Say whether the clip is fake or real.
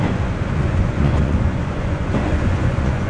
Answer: fake